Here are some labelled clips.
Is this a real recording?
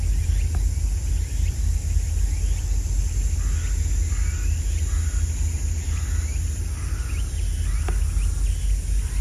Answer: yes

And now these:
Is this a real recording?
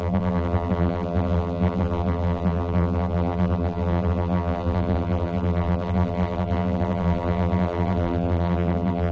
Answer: no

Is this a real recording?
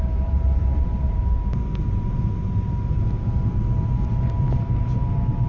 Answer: no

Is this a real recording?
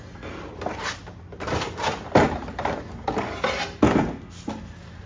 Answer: yes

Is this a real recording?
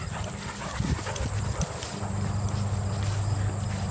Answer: yes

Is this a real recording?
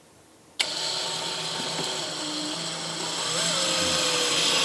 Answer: yes